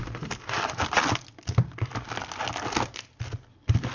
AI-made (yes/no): no